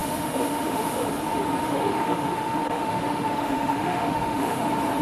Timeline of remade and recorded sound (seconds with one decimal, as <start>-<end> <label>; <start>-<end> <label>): 0.0-1.1 remade; 1.1-1.6 recorded; 1.6-4.6 remade; 4.6-5.0 recorded